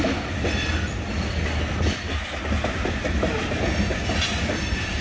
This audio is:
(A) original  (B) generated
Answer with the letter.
A